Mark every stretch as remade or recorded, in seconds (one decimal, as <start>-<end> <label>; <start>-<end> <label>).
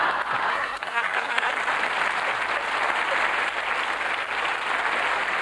0.0-0.5 recorded; 0.5-1.5 remade; 1.5-5.4 recorded